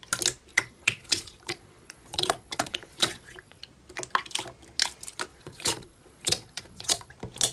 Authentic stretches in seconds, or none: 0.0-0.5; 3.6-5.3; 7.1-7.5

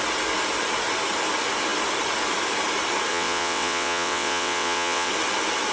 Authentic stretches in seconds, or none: 0.0-3.1; 5.1-5.7

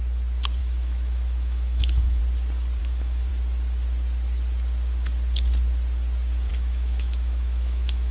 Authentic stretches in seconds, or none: 0.0-0.6; 2.2-2.8; 3.3-6.5

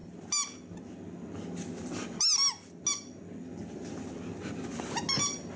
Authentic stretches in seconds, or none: 0.0-5.6

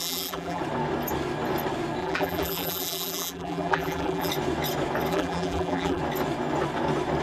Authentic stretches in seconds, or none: 0.6-2.0; 4.3-5.1; 6.0-7.2